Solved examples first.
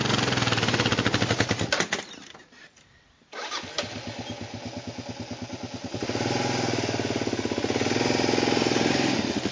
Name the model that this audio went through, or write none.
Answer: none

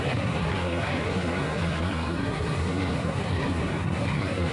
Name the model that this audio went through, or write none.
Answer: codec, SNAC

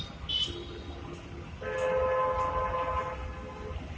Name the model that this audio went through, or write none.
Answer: none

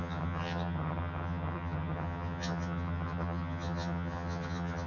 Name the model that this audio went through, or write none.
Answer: vocoder, HiFi-GAN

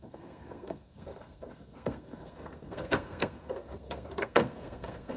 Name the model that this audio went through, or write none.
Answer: codec, SNAC